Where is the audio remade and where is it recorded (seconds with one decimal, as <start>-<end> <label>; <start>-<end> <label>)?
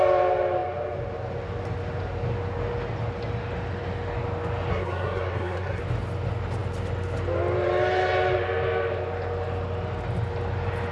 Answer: 0.0-4.7 recorded; 4.7-5.8 remade; 5.8-10.9 recorded